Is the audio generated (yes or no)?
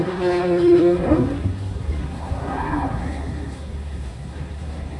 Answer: yes